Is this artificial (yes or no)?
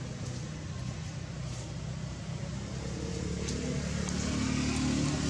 no